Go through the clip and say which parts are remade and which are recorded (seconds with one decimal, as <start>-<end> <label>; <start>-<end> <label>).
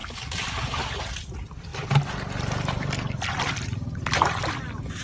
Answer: 0.0-5.0 recorded